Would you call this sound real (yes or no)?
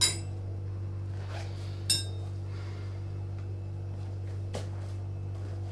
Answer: yes